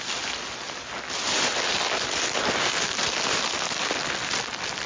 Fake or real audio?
real